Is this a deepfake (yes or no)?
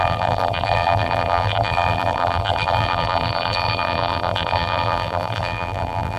yes